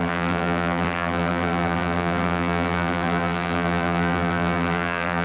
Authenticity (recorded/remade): remade